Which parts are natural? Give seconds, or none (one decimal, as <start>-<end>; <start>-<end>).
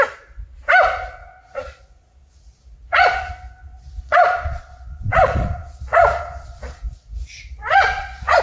0.0-1.2; 3.3-3.7